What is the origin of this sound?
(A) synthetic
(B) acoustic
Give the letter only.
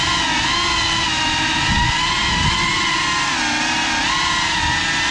B